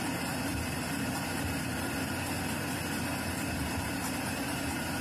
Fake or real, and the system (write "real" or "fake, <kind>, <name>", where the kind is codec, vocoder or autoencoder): real